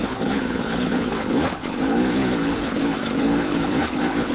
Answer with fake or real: fake